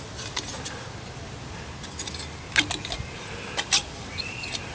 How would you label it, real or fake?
real